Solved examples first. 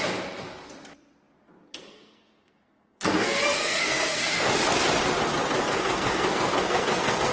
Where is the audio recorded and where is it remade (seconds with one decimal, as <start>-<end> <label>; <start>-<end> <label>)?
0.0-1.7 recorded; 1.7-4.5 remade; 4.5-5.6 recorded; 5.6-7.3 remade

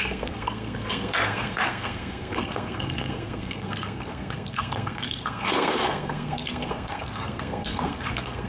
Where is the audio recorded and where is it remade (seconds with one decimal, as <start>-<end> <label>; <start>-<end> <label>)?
0.0-8.5 remade

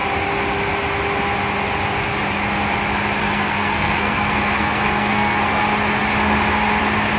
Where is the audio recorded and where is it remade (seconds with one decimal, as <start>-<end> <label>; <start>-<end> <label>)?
0.0-3.2 recorded; 3.2-5.6 remade; 5.6-7.2 recorded

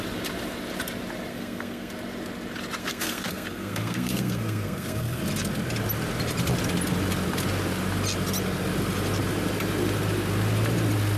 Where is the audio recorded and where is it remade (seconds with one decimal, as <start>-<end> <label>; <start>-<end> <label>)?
0.0-1.3 recorded; 1.3-1.9 remade; 1.9-2.8 recorded; 2.8-5.2 remade; 5.2-11.2 recorded

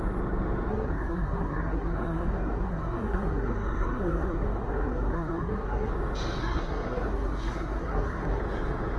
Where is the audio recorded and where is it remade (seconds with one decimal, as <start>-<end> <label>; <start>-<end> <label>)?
0.0-0.7 recorded; 0.7-5.9 remade; 5.9-6.4 recorded; 6.4-8.4 remade; 8.4-9.0 recorded

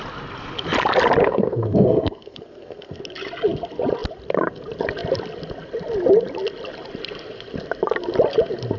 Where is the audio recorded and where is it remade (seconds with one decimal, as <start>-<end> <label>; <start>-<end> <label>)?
0.0-1.2 recorded; 1.2-3.0 remade; 3.0-8.8 recorded

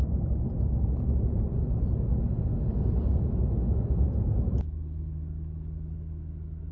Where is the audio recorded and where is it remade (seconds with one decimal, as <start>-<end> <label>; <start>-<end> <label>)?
0.0-6.7 recorded

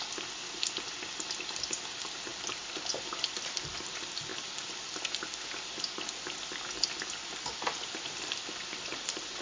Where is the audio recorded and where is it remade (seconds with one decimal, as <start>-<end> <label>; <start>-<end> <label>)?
0.0-9.4 recorded